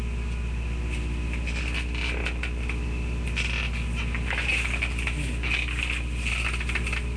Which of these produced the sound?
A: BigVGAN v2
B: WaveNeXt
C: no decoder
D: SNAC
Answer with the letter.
C